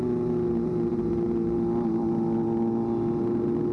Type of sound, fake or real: real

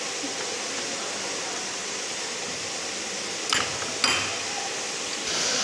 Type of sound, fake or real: real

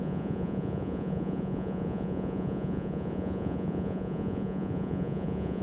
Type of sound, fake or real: fake